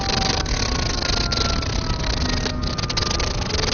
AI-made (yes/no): no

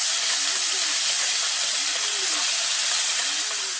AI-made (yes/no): no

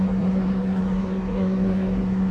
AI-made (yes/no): yes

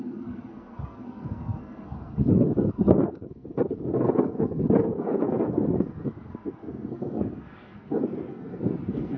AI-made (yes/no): yes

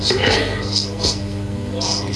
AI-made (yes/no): yes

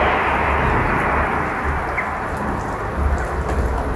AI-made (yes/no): no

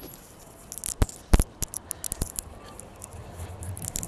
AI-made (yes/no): no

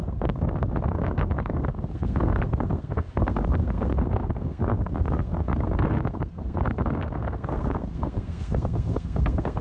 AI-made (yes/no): yes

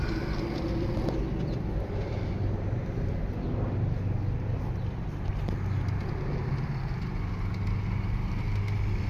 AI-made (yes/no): no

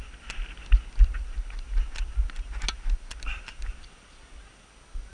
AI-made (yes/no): no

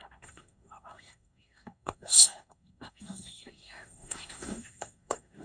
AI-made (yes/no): yes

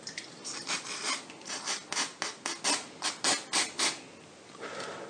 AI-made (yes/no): no